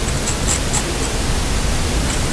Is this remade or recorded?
recorded